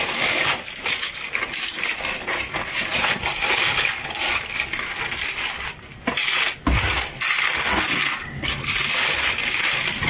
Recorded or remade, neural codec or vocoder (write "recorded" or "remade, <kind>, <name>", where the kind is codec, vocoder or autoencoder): recorded